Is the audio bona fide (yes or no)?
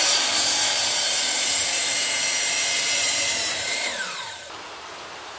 no